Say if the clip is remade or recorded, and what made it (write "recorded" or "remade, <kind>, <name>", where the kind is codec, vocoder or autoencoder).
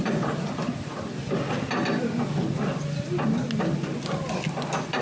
recorded